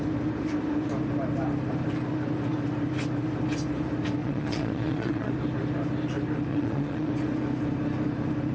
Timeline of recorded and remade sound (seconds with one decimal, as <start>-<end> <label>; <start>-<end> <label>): 0.0-4.2 recorded; 4.2-5.3 remade; 5.3-6.5 recorded; 6.5-7.1 remade; 7.1-8.5 recorded